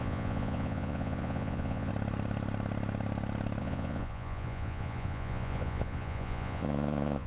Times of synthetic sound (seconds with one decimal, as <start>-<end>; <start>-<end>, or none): 0.0-1.9; 3.6-7.3